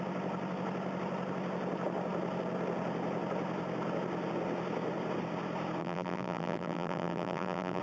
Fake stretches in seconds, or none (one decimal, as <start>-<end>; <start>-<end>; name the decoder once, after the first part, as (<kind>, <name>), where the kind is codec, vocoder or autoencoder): 5.8-7.8 (vocoder, BigVGAN v2)